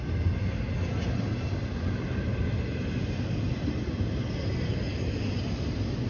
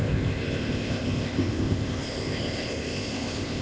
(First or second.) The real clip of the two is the first